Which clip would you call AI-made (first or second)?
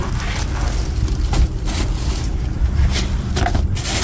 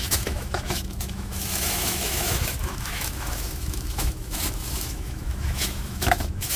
second